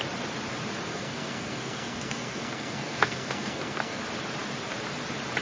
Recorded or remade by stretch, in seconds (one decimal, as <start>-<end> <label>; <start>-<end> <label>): 0.0-0.9 recorded; 0.9-4.0 remade; 4.0-5.4 recorded

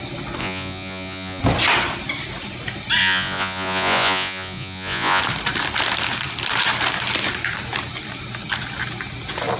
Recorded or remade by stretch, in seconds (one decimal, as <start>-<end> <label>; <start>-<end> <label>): 0.0-0.4 recorded; 0.4-1.4 remade; 1.4-3.0 recorded; 3.0-5.2 remade; 5.2-9.6 recorded